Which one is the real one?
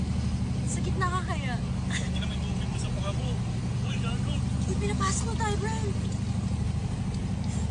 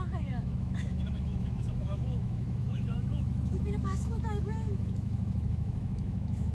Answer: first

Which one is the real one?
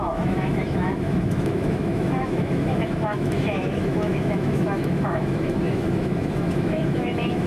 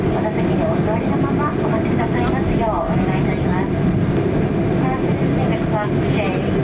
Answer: second